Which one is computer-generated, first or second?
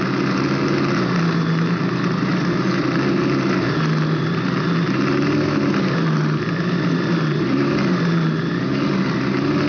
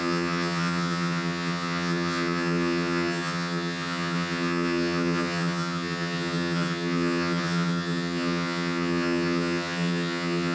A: second